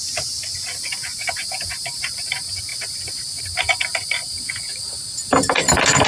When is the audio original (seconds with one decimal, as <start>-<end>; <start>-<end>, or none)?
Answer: none